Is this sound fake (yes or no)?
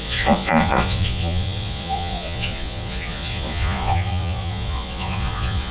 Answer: yes